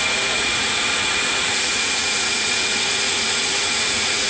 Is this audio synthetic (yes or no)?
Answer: yes